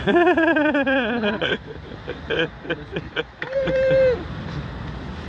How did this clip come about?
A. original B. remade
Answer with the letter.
B